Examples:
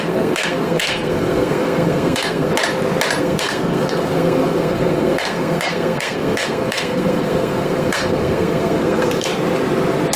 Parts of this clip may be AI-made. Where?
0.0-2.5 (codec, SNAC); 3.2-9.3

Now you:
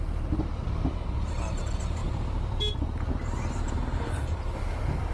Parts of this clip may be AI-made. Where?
none